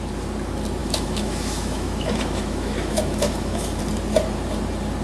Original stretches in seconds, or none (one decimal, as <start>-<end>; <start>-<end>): 0.0-0.8; 3.8-5.0